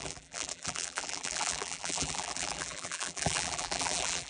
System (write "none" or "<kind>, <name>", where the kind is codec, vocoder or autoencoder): vocoder, BigVGAN v2